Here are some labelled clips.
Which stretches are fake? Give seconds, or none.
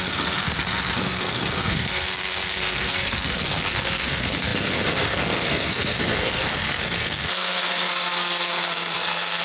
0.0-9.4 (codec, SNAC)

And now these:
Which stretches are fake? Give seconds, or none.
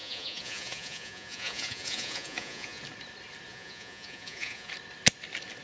0.0-2.8 (vocoder, Vocos); 3.5-4.7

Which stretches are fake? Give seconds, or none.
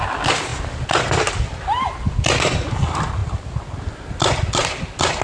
none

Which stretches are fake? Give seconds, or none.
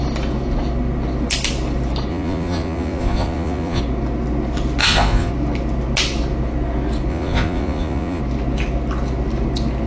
2.1-3.8 (vocoder, Vocos); 4.8-5.3; 7.1-8.2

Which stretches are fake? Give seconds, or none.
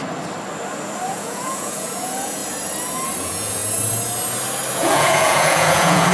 1.1-2.4 (vocoder, Vocos); 3.2-3.6; 4.7-6.1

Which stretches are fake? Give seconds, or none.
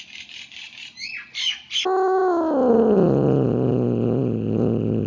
none